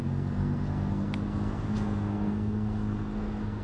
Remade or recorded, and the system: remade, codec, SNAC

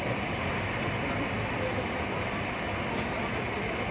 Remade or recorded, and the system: recorded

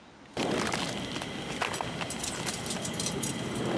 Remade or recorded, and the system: recorded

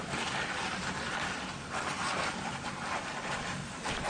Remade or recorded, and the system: recorded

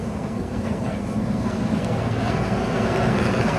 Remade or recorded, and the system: remade, codec, SNAC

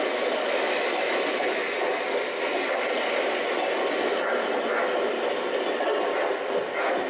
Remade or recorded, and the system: recorded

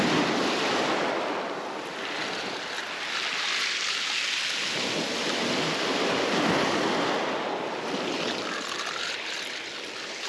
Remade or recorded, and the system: recorded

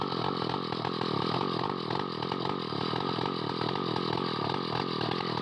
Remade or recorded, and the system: recorded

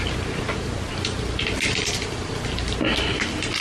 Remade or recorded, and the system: recorded